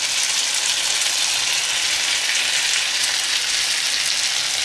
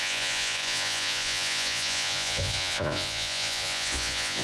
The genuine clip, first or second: first